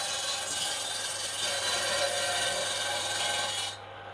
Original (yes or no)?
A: yes